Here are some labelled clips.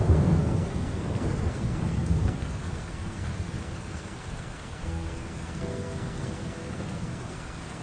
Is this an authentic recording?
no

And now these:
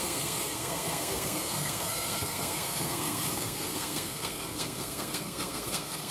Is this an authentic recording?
no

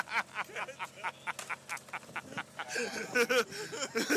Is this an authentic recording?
yes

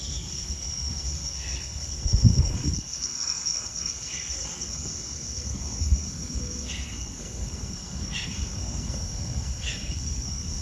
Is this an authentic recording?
no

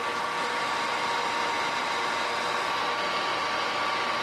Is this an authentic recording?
yes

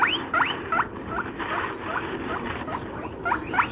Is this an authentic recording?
yes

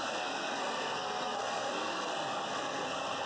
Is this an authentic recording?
no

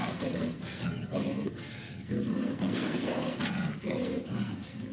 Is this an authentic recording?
no